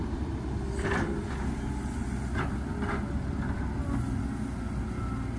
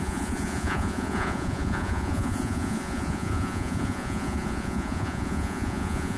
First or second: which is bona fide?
first